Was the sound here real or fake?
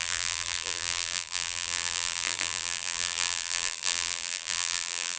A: fake